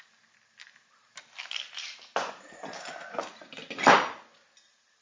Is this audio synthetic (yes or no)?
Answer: no